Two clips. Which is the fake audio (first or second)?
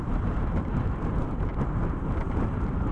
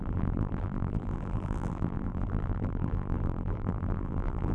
second